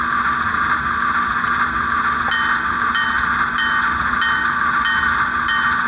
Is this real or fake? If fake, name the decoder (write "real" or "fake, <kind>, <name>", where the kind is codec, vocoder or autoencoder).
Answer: real